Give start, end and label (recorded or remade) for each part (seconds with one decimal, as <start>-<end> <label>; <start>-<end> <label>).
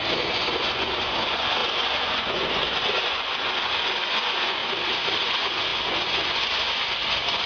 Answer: 0.0-4.6 remade; 4.6-5.2 recorded; 5.2-7.5 remade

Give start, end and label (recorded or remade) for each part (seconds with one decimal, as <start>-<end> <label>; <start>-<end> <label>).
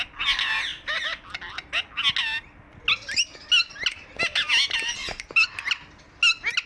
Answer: 0.0-6.7 recorded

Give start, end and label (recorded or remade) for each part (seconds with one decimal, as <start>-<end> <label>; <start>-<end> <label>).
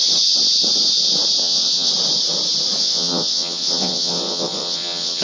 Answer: 0.0-1.4 recorded; 1.4-1.9 remade; 1.9-2.8 recorded; 2.8-5.2 remade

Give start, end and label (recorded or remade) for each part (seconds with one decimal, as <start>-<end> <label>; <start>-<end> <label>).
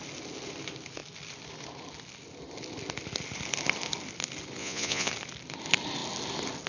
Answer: 0.0-4.6 recorded; 4.6-5.1 remade; 5.1-6.7 recorded